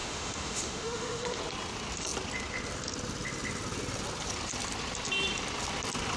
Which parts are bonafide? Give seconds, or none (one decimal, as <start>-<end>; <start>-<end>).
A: 1.4-6.2